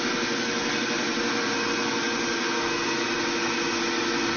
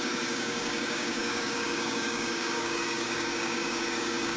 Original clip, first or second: first